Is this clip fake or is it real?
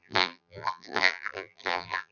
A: fake